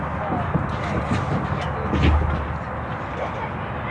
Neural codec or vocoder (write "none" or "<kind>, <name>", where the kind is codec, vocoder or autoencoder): none